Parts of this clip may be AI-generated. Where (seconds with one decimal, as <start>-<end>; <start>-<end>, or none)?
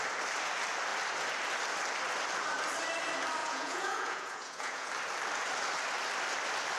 3.4-4.9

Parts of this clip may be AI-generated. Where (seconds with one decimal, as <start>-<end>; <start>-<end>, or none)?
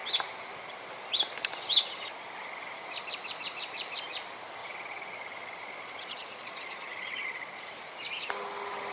4.6-7.7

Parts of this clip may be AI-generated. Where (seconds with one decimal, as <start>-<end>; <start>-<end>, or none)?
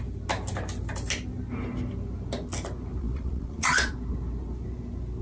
3.0-3.9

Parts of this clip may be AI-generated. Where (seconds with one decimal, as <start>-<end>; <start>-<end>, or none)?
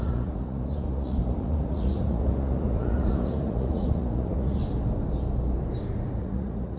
0.0-4.6; 6.2-6.8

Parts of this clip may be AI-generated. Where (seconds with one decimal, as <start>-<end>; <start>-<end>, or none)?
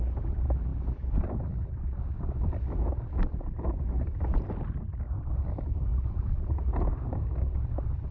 none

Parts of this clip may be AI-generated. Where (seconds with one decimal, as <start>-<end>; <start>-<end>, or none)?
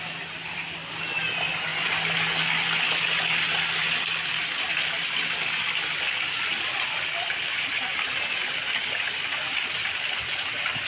none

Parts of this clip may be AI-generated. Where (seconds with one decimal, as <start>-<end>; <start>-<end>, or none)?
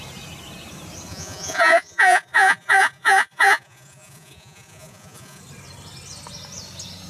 1.1-5.4